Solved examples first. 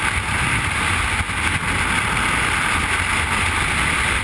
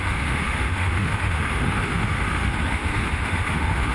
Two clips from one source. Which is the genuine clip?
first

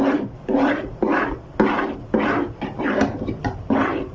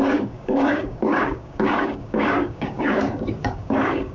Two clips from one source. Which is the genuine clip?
first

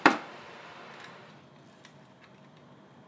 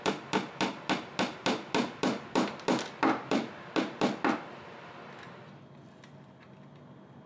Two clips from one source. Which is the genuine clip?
second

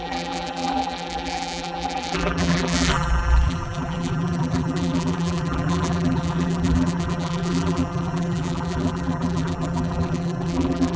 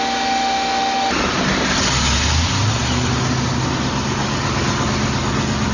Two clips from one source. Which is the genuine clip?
second